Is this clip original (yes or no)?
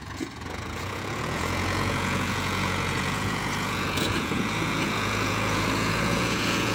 no